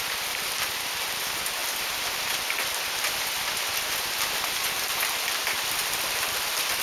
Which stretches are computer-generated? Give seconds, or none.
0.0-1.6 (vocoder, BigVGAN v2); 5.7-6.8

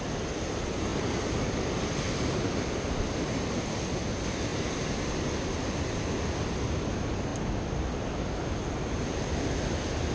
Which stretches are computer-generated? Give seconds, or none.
none

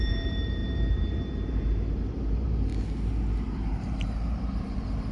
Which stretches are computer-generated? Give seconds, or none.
0.0-2.7 (vocoder, BigVGAN v2); 3.5-5.1